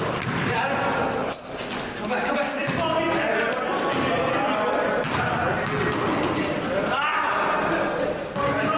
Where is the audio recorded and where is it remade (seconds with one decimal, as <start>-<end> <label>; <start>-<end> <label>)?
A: 0.0-8.8 recorded